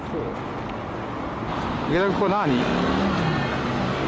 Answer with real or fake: real